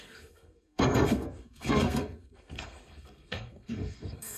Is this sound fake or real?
fake